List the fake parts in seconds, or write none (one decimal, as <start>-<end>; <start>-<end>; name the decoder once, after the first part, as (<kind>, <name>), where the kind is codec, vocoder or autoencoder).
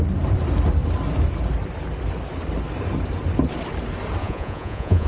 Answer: 4.2-5.1 (vocoder, Vocos)